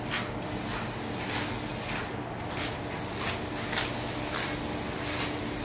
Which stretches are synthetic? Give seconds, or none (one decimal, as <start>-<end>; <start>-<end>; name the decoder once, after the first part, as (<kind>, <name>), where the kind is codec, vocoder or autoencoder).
none